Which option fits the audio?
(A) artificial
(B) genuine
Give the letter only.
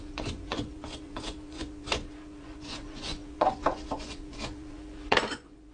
A